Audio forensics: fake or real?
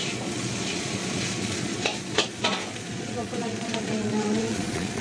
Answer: fake